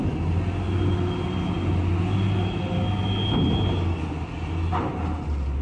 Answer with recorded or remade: recorded